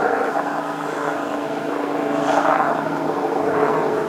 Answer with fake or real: fake